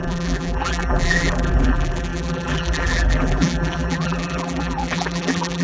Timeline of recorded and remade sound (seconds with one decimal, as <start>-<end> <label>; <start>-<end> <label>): 0.0-5.6 remade